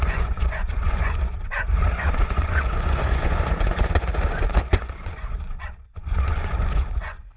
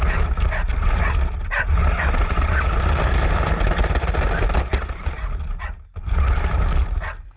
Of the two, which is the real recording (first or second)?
second